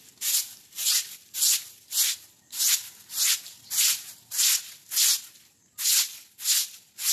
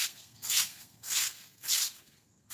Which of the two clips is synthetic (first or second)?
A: second